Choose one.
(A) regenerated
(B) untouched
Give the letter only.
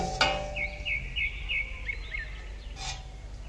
B